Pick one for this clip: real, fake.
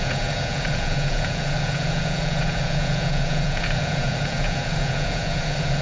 fake